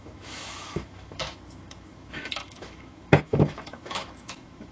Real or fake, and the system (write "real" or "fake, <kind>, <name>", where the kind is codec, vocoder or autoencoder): fake, autoencoder, DAC-VAE